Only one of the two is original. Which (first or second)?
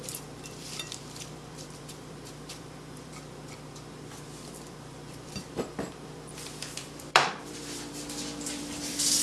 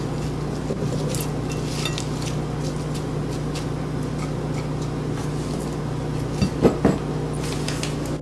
second